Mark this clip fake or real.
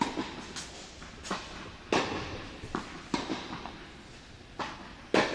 real